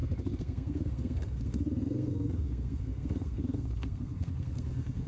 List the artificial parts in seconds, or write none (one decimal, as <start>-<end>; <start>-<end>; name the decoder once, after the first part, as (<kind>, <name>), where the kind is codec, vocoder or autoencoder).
0.0-5.1 (codec, SNAC)